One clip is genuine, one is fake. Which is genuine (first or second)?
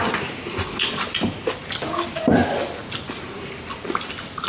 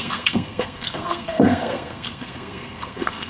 first